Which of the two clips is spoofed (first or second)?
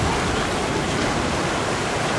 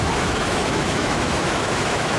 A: second